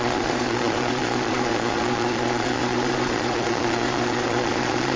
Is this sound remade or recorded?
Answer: remade